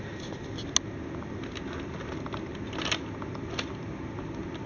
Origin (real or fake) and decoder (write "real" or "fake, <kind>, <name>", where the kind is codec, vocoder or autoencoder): real